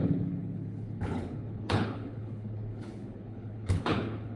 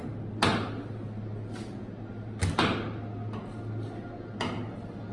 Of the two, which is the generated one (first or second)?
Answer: first